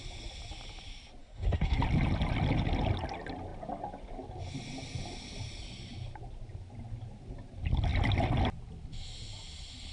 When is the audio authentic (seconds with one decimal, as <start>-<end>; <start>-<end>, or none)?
0.0-1.2; 1.8-9.9